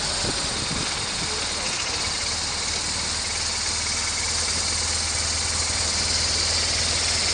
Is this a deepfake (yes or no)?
no